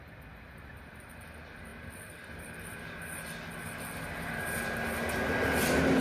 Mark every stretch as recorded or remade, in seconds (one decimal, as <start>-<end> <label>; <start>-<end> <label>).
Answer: 0.0-6.0 recorded